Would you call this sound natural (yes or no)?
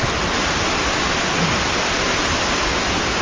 yes